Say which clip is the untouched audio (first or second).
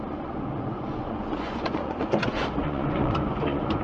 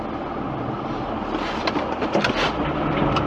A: second